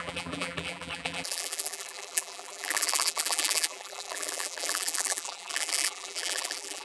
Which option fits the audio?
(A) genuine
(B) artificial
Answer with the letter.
B